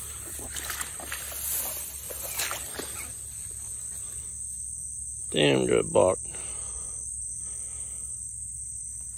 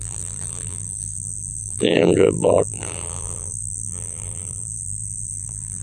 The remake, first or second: second